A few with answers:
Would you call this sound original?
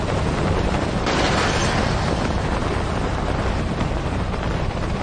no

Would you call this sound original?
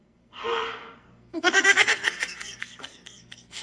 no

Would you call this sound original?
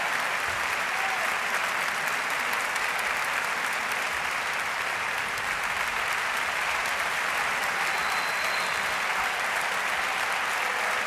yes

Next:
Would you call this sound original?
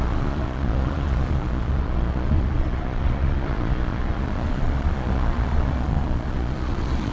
no